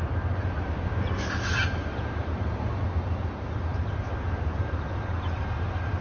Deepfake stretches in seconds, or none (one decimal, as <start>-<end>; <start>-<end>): 1.9-2.8; 3.7-6.0